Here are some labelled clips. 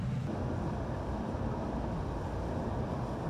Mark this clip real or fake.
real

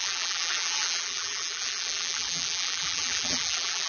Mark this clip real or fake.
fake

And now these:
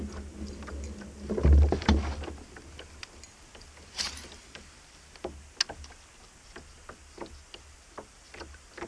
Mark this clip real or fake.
real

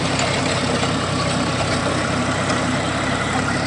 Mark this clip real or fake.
fake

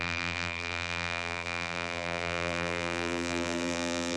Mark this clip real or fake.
fake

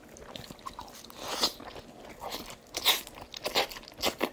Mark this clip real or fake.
real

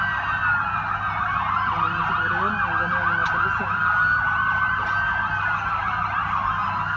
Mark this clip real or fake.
real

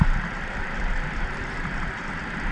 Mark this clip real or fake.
fake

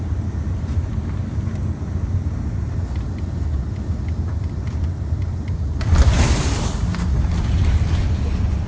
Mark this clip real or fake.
real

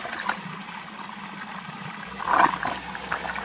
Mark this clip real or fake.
real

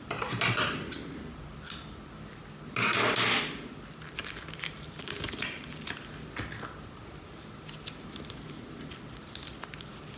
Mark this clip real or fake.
real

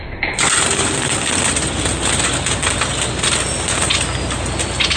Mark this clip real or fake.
real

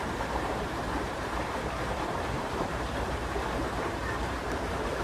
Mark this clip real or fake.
fake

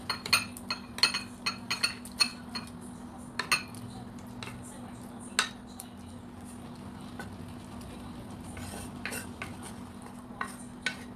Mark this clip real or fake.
real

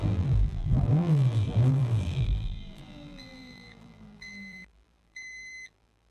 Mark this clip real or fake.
fake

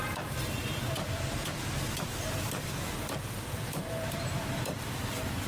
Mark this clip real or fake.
fake